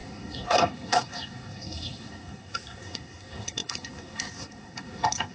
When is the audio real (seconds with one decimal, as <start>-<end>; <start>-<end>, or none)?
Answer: none